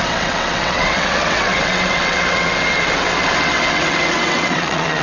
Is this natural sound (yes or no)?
no